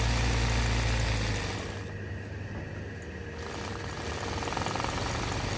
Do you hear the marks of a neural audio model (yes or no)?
no